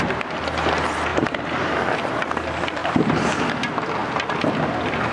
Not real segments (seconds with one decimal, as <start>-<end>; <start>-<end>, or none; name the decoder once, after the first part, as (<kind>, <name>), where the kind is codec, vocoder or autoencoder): 1.1-1.7 (vocoder, BigVGAN v2); 2.8-3.3